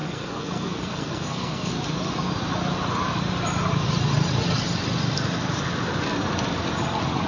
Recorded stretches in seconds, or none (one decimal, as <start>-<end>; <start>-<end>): 1.7-7.3